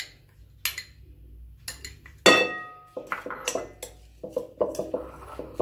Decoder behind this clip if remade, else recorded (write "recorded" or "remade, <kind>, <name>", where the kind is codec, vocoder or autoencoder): recorded